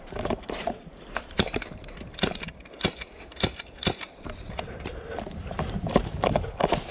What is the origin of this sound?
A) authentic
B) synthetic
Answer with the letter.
B